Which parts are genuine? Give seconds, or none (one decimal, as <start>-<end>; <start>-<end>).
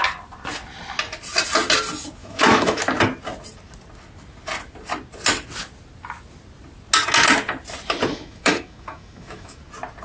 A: 0.0-2.2; 2.8-8.1; 9.6-10.0